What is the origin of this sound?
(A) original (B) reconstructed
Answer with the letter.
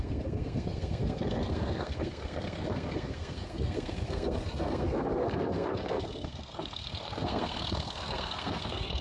B